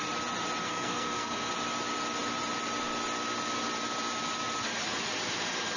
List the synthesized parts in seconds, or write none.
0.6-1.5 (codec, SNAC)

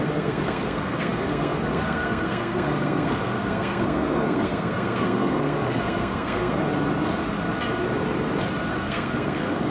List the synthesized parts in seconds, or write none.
0.0-6.6 (codec, SNAC); 8.7-9.7

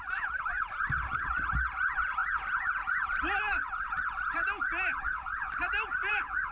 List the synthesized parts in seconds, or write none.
none

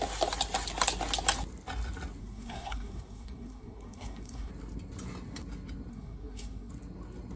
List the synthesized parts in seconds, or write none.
2.2-4.5 (codec, SNAC); 5.9-6.7

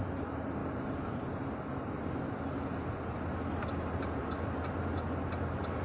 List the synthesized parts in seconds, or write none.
none